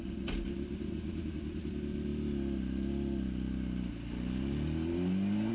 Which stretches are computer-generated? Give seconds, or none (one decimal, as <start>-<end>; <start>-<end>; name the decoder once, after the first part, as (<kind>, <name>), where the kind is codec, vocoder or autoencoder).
none